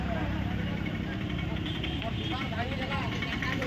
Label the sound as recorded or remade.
remade